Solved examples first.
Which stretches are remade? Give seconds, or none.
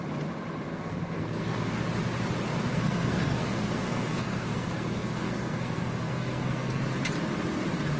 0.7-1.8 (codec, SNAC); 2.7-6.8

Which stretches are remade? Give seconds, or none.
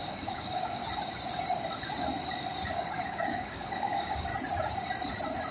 0.0-0.8 (codec, DAC); 2.7-4.3